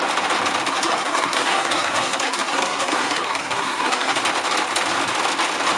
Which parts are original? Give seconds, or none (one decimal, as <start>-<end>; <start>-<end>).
0.0-0.7; 4.2-5.8